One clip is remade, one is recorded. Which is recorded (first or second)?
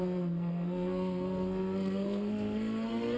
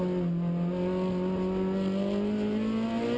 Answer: second